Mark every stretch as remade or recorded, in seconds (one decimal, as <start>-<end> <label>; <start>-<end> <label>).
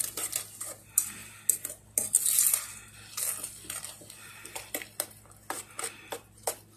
0.0-6.8 recorded